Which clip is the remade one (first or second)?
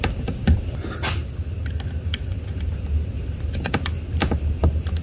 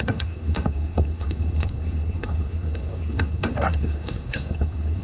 second